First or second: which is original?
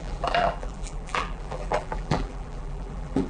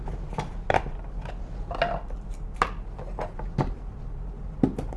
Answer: second